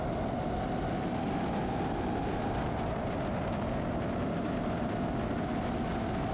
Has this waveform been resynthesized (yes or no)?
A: no